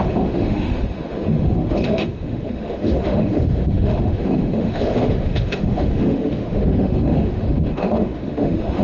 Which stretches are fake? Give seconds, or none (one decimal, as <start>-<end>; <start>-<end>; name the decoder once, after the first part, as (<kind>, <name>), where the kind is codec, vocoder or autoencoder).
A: 0.0-8.8 (autoencoder, DAC-VAE)